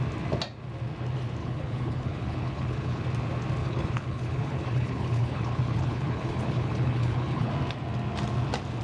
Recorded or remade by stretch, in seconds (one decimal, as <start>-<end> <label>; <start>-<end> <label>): 0.0-1.4 recorded; 1.4-3.0 remade; 3.0-3.6 recorded; 3.6-7.5 remade; 7.5-8.8 recorded